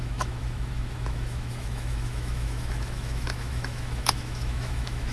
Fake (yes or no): yes